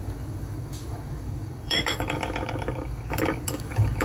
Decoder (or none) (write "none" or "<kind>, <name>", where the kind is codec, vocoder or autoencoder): codec, DAC